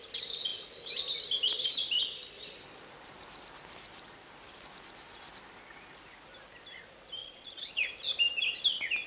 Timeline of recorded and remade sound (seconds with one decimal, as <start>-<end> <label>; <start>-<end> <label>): 0.0-7.2 recorded; 7.2-7.7 remade; 7.7-9.1 recorded